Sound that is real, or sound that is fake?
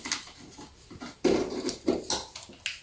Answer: real